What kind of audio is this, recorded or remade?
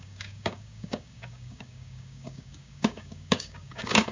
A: remade